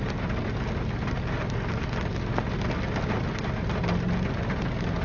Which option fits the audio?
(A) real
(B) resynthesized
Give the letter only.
A